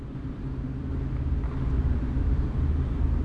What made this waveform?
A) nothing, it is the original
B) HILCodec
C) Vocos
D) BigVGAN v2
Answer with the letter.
A